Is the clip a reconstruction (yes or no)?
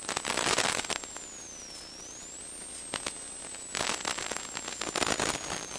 no